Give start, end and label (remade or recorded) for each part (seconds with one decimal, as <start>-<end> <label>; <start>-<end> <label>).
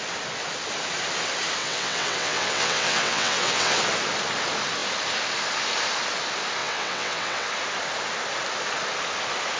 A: 0.0-1.6 recorded; 1.6-3.8 remade; 3.8-6.6 recorded; 6.6-7.5 remade; 7.5-9.6 recorded